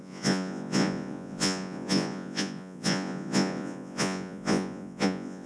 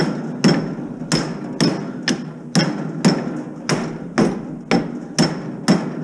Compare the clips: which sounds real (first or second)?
second